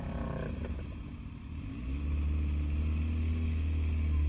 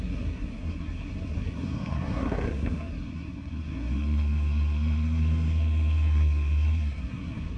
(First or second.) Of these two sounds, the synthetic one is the second